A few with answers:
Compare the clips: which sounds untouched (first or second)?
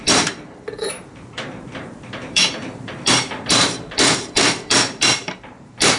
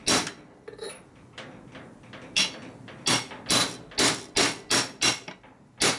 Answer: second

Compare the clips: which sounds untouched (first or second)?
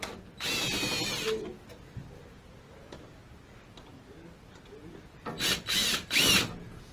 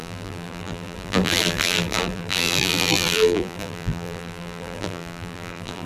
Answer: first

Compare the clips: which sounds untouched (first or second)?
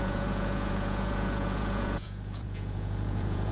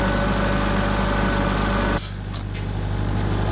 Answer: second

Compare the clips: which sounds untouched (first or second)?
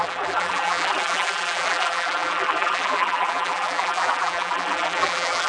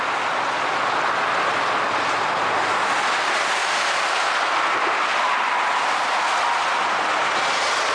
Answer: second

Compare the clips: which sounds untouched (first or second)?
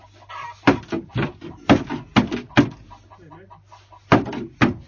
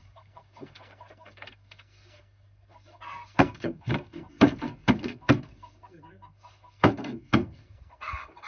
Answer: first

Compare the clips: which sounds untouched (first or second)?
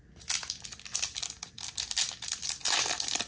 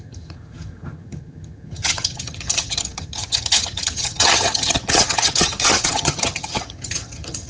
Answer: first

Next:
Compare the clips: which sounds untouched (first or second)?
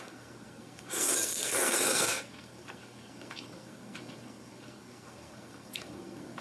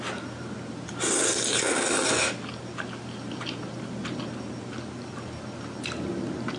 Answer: second